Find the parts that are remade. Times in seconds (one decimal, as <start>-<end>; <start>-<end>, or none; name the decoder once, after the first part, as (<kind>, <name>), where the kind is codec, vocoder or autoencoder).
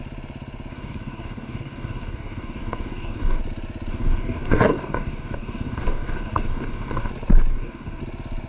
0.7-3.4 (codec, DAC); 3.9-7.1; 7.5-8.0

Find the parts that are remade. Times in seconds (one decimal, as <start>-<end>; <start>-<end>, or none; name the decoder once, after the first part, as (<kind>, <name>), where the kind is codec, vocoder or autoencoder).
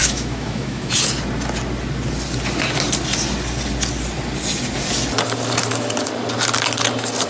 0.0-0.9 (autoencoder, DAC-VAE)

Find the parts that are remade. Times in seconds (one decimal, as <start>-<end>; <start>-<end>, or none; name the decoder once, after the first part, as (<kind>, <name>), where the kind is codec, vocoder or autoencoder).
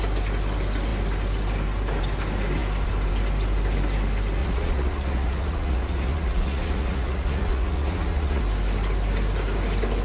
4.4-8.4 (vocoder, Vocos)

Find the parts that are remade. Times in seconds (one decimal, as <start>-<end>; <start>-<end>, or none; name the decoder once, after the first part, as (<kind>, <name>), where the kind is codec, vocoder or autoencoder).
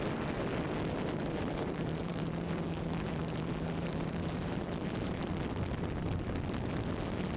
1.2-5.2 (vocoder, BigVGAN v2)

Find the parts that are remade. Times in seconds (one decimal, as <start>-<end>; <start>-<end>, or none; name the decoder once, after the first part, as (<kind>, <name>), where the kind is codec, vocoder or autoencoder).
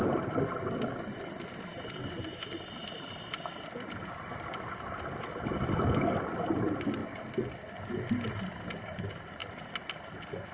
none